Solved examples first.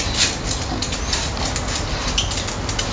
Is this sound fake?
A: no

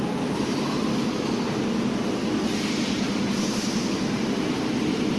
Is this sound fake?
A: no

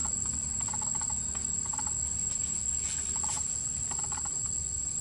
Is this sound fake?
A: no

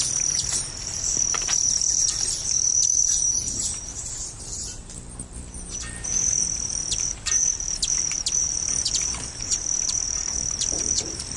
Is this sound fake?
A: yes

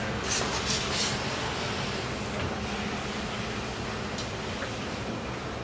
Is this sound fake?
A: no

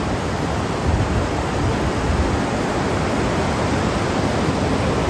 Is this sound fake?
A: no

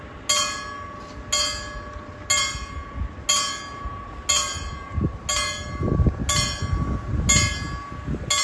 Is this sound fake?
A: no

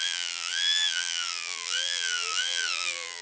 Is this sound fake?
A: yes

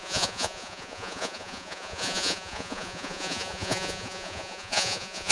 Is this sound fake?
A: yes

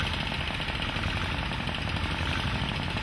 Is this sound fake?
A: no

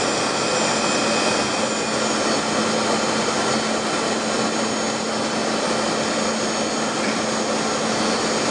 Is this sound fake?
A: no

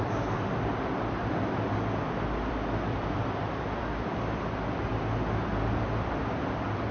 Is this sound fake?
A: yes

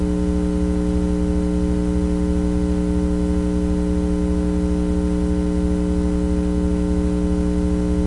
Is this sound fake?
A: no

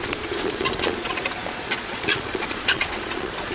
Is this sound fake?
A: yes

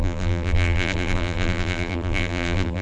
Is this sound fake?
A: yes